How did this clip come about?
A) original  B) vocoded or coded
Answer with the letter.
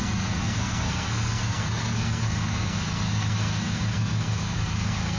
B